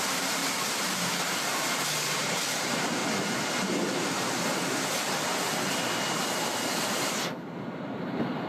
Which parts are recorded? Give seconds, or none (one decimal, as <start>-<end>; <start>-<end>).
3.0-7.4